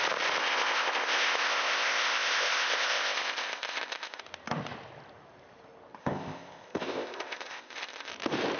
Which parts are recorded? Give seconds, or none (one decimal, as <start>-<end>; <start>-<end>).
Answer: 0.0-0.4; 4.2-6.0; 8.1-8.6